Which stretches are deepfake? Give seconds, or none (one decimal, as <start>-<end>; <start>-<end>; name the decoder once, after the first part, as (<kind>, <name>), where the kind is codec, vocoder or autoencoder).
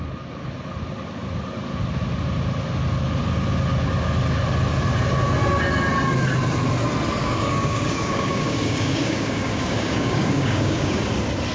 7.2-11.1 (codec, DAC)